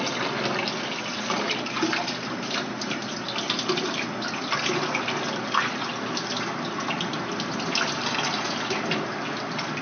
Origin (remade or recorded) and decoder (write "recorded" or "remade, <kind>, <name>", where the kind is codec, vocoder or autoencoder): recorded